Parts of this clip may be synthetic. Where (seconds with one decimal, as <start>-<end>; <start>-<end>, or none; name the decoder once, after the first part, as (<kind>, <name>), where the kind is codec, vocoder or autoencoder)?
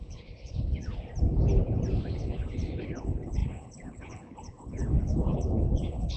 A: 0.0-0.9 (codec, HILCodec); 2.0-6.2